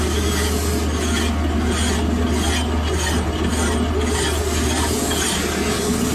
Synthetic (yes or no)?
no